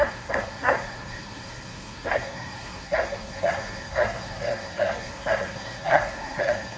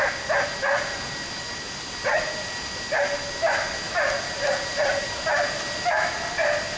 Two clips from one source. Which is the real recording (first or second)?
second